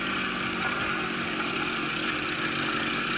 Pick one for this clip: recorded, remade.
recorded